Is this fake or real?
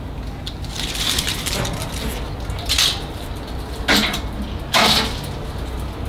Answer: real